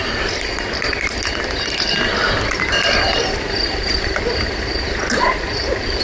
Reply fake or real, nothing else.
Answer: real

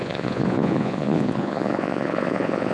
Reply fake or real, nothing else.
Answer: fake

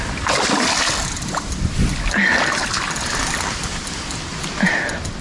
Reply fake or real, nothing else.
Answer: real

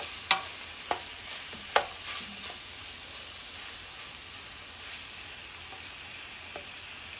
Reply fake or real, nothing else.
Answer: real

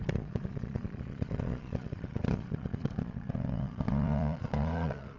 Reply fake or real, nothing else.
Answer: fake